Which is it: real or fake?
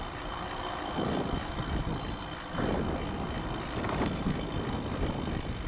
real